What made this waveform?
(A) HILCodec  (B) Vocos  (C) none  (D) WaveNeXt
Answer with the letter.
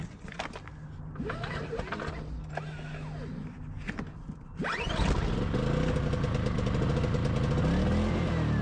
C